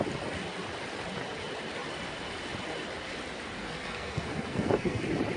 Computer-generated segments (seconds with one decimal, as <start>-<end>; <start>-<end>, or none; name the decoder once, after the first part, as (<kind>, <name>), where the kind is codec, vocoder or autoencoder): 3.6-5.0 (codec, SNAC)